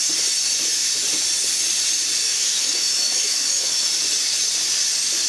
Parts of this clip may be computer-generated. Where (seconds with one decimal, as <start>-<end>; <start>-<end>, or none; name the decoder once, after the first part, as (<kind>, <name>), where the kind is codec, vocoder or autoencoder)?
2.2-3.9 (autoencoder, DAC-VAE)